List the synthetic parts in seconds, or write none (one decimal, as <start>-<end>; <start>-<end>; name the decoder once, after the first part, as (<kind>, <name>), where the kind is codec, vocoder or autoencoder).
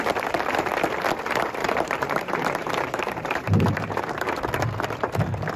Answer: 1.6-4.4 (vocoder, BigVGAN v2)